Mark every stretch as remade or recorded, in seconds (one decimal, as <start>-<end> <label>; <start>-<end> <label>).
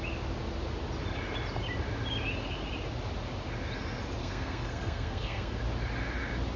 0.0-4.2 recorded; 4.2-5.6 remade; 5.6-6.6 recorded